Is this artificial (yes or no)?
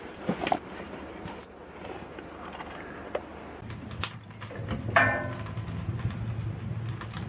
no